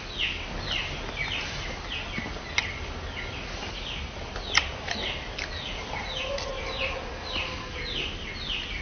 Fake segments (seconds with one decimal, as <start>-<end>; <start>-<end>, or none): none